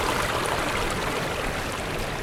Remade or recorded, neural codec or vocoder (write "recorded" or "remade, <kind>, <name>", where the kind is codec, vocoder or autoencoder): recorded